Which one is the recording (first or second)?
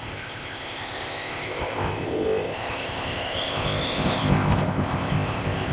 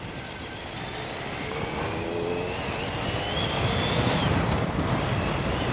second